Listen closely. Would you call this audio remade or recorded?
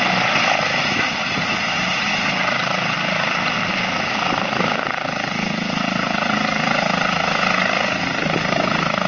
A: recorded